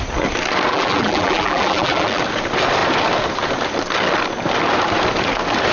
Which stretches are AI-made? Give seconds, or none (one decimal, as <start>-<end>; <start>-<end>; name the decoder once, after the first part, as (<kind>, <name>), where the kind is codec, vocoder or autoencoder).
0.7-2.2 (vocoder, BigVGAN v2)